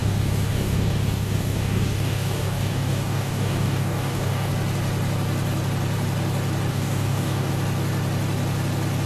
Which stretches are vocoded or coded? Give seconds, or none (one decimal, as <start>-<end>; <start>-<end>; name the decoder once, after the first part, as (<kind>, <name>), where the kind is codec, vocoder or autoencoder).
0.0-4.5 (codec, DAC); 6.7-7.5